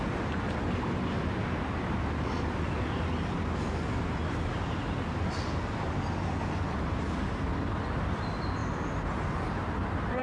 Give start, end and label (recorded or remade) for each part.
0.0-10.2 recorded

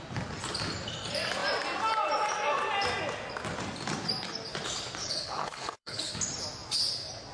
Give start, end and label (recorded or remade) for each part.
0.0-5.0 recorded; 5.0-6.1 remade; 6.1-7.3 recorded